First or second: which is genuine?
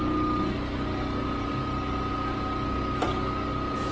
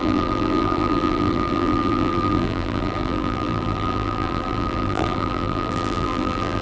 first